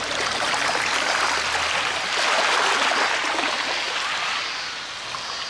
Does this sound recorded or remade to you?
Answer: recorded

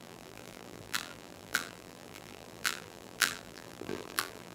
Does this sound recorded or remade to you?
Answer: remade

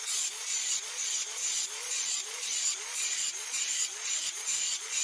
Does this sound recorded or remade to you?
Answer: remade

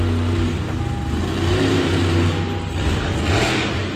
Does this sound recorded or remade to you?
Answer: recorded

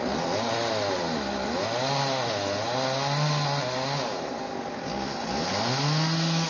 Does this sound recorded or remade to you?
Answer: recorded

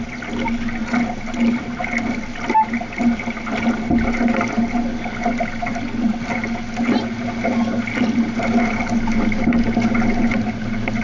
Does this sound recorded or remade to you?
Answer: recorded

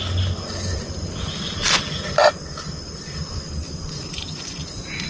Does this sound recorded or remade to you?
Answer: remade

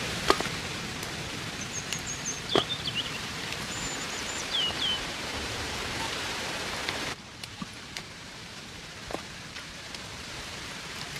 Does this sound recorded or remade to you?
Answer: remade